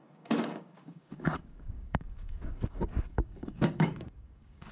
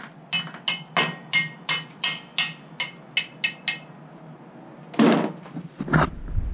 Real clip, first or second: second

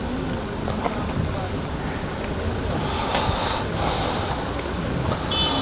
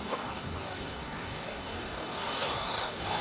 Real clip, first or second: first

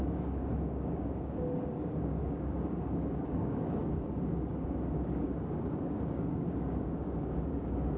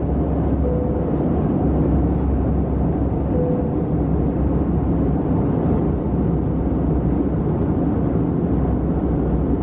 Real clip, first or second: second